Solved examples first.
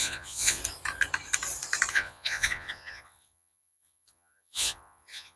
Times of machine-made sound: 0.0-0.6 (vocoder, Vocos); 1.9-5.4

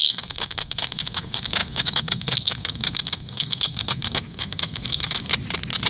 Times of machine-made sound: 0.0-5.3 (codec, SNAC)